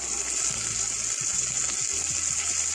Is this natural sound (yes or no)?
yes